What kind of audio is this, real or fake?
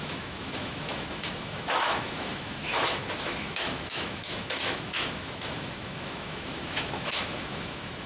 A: fake